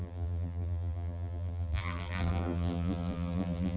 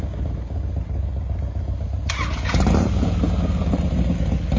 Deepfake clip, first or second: first